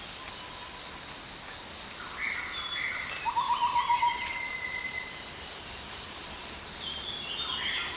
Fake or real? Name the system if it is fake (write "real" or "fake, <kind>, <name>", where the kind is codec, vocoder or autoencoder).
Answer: real